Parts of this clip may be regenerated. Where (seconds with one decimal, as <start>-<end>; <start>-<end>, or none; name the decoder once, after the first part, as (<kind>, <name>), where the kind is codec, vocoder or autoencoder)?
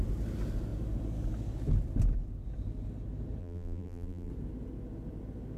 3.4-4.3 (vocoder, BigVGAN v2)